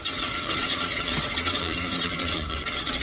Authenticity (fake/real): fake